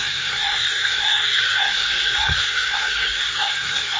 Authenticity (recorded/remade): remade